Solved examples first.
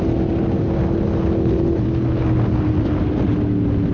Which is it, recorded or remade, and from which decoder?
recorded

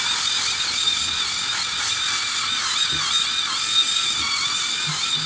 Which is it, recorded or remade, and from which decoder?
recorded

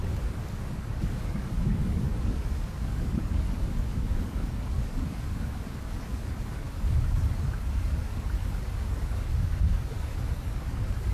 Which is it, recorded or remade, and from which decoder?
remade, codec, DAC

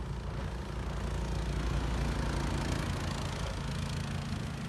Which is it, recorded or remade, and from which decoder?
recorded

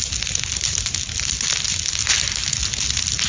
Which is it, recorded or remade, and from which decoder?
recorded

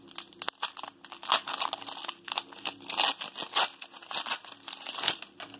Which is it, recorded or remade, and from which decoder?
recorded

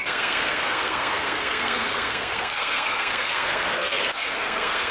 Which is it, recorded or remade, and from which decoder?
remade, codec, SNAC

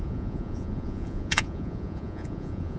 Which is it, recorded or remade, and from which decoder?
remade, vocoder, Vocos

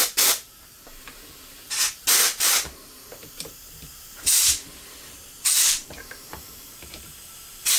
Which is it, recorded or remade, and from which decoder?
remade, vocoder, BigVGAN v2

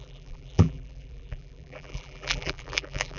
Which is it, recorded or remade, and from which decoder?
remade, vocoder, BigVGAN v2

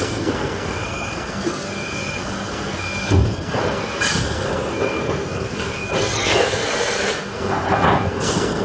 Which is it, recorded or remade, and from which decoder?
remade, codec, SNAC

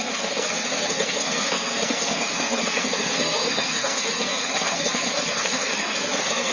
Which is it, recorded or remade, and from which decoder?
remade, codec, SNAC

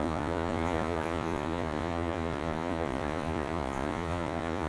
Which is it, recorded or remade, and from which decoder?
remade, vocoder, Vocos